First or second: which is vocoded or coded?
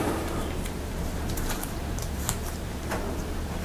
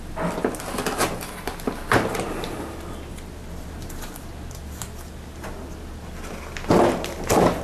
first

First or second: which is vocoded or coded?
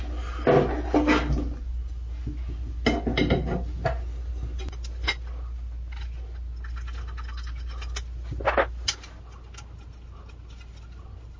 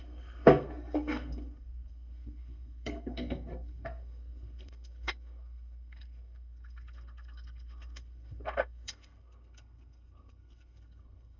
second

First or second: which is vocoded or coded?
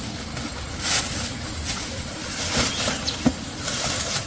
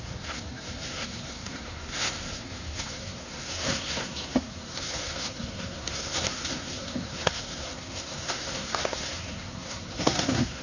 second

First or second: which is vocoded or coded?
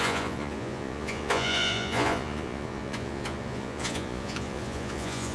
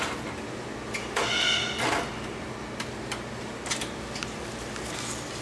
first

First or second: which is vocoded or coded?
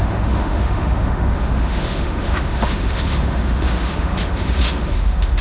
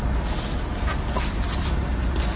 first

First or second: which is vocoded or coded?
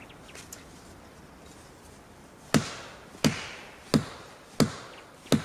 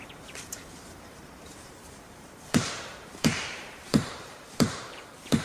second